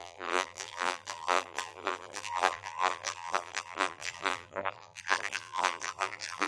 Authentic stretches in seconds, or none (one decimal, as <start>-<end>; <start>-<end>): none